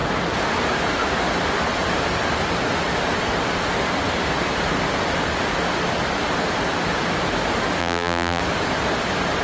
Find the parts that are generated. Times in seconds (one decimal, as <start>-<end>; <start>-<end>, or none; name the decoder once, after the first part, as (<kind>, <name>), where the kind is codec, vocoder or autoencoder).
7.8-8.4 (vocoder, BigVGAN v2)

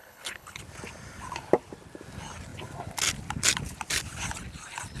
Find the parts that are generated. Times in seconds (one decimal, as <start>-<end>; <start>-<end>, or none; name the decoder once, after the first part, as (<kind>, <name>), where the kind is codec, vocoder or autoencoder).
0.0-0.6 (codec, HILCodec)

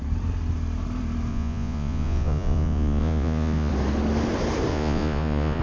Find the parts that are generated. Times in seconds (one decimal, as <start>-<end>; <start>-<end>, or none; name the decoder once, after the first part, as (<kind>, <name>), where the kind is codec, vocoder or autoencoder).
1.3-3.7 (vocoder, Vocos); 4.7-5.6

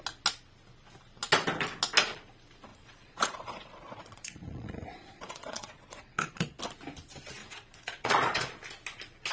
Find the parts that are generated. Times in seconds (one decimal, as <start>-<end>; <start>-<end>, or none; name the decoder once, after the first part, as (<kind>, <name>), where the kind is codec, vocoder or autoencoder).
2.7-6.6 (vocoder, Vocos); 7.4-8.5

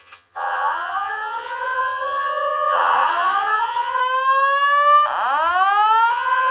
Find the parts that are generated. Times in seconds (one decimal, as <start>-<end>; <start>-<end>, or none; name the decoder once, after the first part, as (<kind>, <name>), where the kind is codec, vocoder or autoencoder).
0.0-4.0 (vocoder, HiFi-GAN); 6.1-6.5

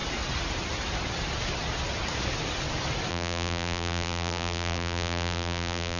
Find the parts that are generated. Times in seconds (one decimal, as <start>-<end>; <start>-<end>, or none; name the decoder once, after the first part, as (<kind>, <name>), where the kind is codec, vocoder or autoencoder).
3.1-6.0 (vocoder, BigVGAN v2)

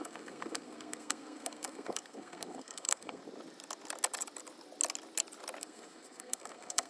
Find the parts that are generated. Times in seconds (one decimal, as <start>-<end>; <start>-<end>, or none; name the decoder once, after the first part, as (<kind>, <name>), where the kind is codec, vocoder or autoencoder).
0.0-3.2 (codec, SNAC); 5.6-6.9